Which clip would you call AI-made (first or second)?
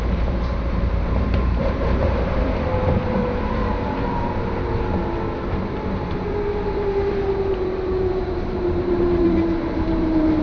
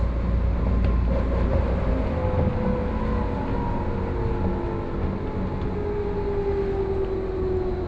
first